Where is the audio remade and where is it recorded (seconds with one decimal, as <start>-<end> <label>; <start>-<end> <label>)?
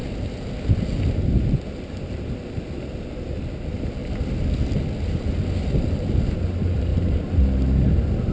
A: 0.0-8.3 recorded